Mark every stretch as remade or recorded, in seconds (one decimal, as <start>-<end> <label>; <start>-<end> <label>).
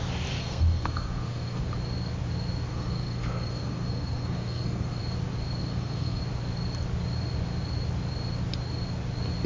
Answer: 0.0-0.4 recorded; 0.4-1.6 remade; 1.6-2.7 recorded; 2.7-5.0 remade; 5.0-5.6 recorded; 5.6-6.2 remade; 6.2-9.5 recorded